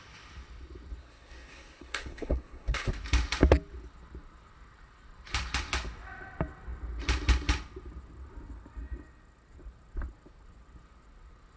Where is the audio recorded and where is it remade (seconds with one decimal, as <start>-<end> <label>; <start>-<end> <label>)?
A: 0.0-1.0 recorded; 1.0-2.9 remade; 2.9-11.6 recorded